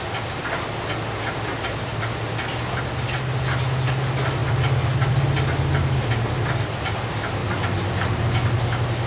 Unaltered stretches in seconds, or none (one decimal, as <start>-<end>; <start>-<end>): 0.0-9.1